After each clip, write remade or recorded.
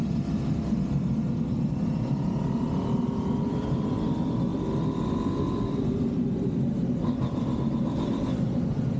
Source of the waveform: recorded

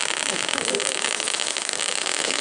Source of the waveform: remade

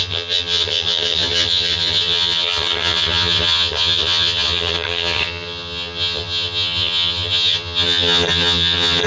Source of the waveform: remade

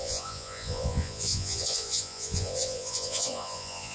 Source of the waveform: remade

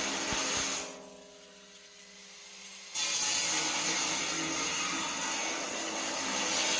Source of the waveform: recorded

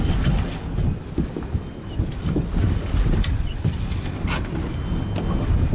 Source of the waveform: recorded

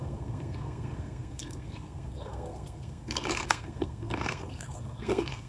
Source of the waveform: remade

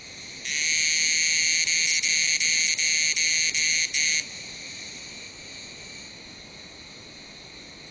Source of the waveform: recorded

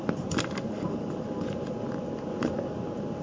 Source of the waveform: recorded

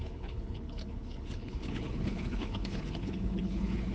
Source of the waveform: remade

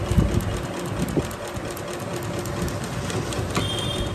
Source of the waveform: recorded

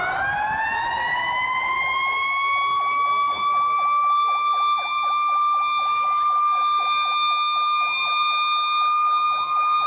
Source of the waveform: recorded